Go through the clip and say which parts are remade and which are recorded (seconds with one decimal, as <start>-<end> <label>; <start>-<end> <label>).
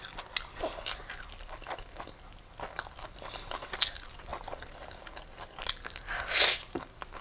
0.0-7.2 recorded